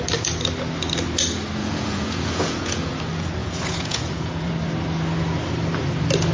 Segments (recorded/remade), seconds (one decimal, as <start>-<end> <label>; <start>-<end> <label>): 0.0-1.6 recorded; 1.6-2.9 remade; 2.9-3.4 recorded; 3.4-4.5 remade; 4.5-6.3 recorded